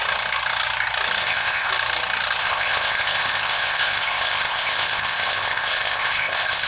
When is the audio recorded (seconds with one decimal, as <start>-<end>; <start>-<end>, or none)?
0.0-1.2; 1.7-2.4